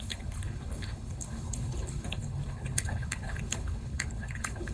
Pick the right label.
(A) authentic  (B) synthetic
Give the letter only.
B